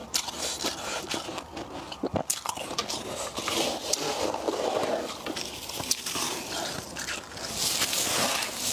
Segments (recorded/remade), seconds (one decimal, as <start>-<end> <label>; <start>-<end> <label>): 0.0-8.7 recorded